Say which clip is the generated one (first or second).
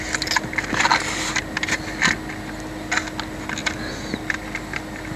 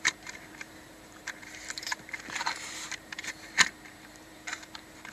second